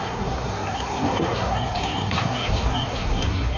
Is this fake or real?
fake